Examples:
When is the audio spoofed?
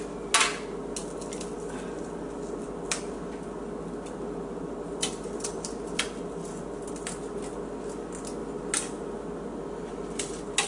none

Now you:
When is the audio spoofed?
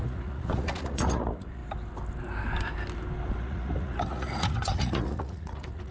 0.0-1.6 (vocoder, Vocos); 3.4-5.9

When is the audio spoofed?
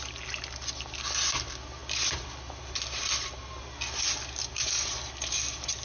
none